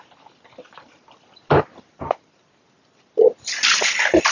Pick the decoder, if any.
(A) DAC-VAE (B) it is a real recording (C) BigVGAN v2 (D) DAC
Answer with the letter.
B